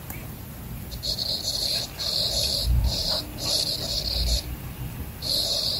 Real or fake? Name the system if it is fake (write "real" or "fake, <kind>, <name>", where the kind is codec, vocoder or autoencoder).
real